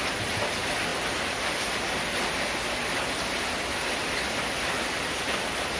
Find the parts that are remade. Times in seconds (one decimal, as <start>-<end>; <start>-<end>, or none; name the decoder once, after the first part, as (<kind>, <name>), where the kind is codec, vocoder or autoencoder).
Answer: none